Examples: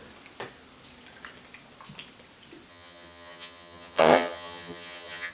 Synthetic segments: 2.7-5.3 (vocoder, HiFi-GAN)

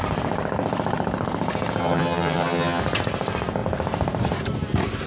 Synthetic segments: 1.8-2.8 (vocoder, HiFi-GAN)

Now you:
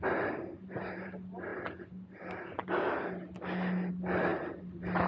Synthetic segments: none